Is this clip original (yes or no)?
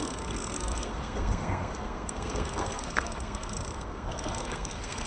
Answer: no